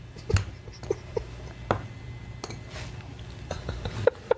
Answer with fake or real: real